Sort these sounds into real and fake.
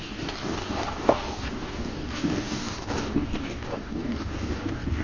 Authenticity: fake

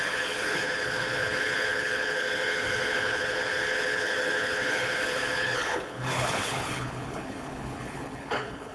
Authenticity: fake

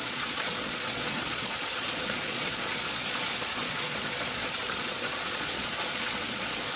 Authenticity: fake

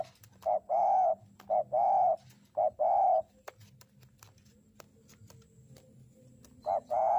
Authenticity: real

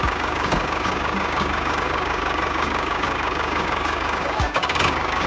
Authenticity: fake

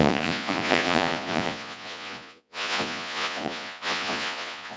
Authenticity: fake